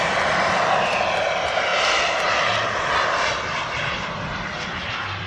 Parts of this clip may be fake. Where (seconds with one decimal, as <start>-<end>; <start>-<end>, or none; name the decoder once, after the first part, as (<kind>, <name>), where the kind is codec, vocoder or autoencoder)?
0.0-5.3 (vocoder, BigVGAN v2)